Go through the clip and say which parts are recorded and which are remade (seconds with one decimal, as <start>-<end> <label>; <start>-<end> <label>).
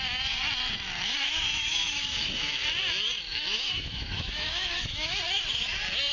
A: 0.0-1.2 recorded; 1.2-2.6 remade; 2.6-3.3 recorded; 3.3-5.2 remade; 5.2-6.1 recorded